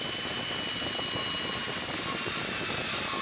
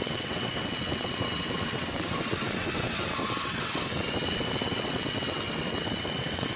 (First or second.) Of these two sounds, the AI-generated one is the second